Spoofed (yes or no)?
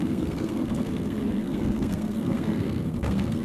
yes